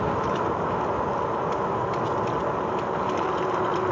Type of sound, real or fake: real